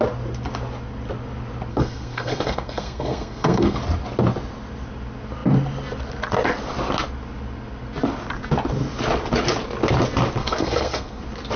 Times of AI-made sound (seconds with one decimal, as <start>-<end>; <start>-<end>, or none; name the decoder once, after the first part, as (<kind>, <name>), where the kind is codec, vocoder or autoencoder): 1.7-3.8 (codec, SNAC); 10.4-11.2